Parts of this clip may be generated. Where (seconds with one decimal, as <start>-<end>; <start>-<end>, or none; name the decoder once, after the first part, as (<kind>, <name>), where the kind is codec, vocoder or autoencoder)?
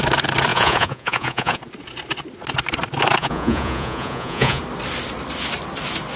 0.5-1.6 (vocoder, Vocos); 3.2-4.6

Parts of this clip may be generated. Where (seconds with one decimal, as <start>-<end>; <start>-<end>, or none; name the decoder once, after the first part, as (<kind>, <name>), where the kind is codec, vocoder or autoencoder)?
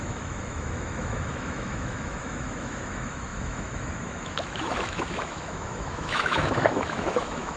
0.0-7.6 (autoencoder, DAC-VAE)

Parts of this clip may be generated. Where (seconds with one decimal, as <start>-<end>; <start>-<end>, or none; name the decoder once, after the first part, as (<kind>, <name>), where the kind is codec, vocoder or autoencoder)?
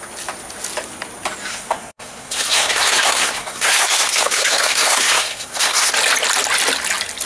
1.5-5.9 (codec, SNAC)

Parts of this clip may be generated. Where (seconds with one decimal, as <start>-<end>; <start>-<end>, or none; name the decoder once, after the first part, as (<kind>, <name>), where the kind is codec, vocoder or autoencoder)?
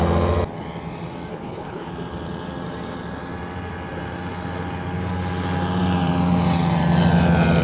1.3-1.9 (codec, HILCodec)